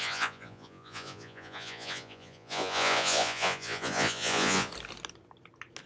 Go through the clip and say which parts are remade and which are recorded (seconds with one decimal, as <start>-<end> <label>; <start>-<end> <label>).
0.0-4.7 remade; 4.7-5.9 recorded

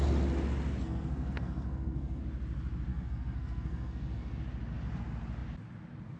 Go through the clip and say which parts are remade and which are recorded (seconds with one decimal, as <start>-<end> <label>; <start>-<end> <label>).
0.0-0.8 recorded; 0.8-2.2 remade; 2.2-2.9 recorded; 2.9-4.4 remade; 4.4-6.2 recorded